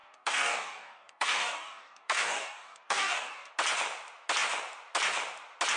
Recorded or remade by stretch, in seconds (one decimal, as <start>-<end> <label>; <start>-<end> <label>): 0.0-3.5 remade; 3.5-5.8 recorded